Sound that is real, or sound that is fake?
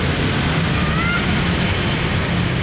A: real